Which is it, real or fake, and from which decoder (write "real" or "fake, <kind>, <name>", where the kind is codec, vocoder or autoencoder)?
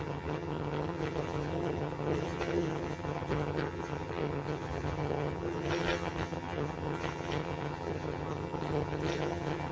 fake, vocoder, HiFi-GAN